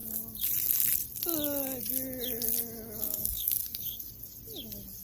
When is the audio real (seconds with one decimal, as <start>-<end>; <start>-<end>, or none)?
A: 0.0-3.0; 4.1-5.0